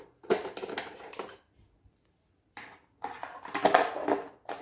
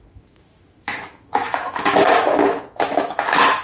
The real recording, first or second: first